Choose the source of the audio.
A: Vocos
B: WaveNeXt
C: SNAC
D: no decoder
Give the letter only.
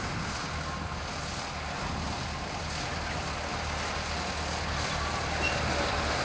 D